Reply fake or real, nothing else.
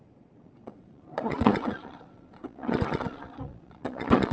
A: fake